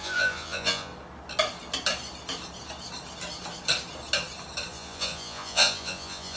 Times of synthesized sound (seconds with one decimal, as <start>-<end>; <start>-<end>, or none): 0.0-0.9; 4.7-6.4